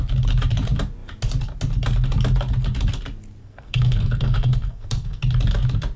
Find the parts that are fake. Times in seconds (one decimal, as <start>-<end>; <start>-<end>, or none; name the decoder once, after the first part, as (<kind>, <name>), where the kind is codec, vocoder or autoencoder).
3.4-5.2 (codec, SNAC)